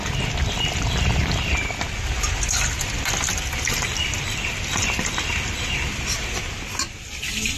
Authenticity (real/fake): real